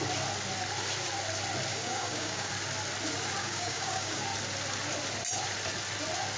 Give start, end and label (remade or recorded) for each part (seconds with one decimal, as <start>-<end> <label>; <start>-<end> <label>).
0.0-1.7 recorded; 1.7-2.5 remade; 2.5-3.4 recorded; 3.4-4.2 remade; 4.2-6.4 recorded